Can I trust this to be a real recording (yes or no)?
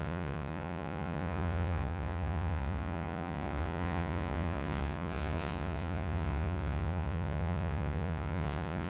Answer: no